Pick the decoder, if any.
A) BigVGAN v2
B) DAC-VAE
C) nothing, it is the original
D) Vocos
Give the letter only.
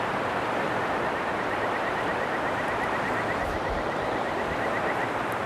C